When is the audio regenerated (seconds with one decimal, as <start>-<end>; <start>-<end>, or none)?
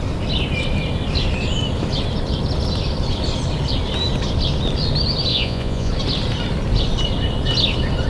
5.3-5.9